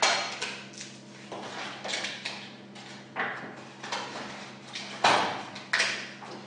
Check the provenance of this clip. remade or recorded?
recorded